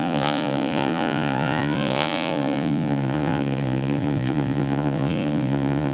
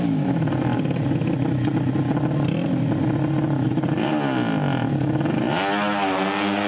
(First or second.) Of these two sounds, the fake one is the first